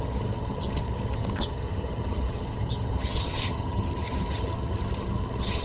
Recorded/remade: remade